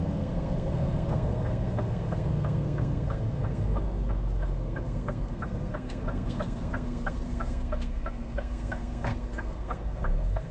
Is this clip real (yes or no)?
no